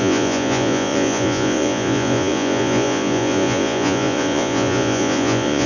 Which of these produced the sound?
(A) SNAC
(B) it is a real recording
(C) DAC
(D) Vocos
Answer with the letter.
D